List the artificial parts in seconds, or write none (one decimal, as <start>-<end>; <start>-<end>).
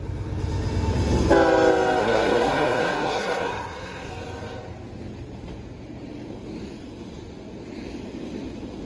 2.0-4.1